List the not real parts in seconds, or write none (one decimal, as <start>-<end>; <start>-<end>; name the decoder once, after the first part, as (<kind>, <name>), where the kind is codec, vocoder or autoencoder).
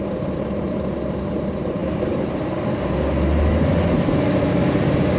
none